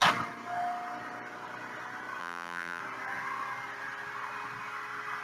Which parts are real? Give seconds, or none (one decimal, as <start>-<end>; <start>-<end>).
0.0-2.2; 2.8-5.2